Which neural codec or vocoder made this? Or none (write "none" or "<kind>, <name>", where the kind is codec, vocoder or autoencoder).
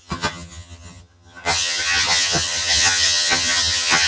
vocoder, HiFi-GAN